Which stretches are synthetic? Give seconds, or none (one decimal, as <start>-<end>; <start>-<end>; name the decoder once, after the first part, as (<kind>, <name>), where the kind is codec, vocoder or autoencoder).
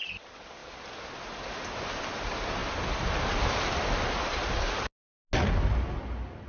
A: none